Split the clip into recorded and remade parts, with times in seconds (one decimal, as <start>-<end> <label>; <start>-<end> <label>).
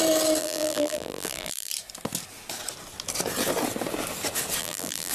0.0-0.4 recorded; 0.4-1.7 remade; 1.7-4.6 recorded; 4.6-5.1 remade